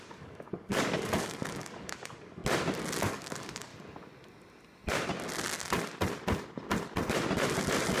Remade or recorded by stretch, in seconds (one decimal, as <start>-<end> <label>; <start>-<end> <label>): 0.0-2.4 remade; 2.4-3.0 recorded; 3.0-3.7 remade; 3.7-8.0 recorded